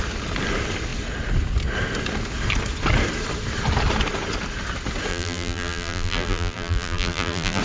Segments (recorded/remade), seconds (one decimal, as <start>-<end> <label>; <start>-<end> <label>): 0.0-5.1 recorded; 5.1-7.6 remade